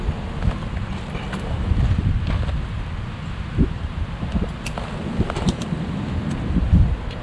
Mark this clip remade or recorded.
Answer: recorded